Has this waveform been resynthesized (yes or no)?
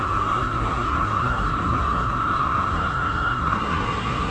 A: yes